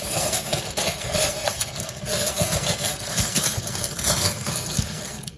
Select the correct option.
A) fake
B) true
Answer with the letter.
A